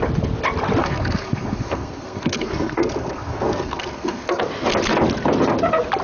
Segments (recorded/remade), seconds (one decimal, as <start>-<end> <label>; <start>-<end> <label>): 0.0-0.8 recorded; 0.8-4.4 remade; 4.4-6.0 recorded